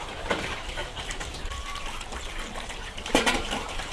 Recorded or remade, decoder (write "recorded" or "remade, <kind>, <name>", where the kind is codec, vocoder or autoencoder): remade, vocoder, BigVGAN v2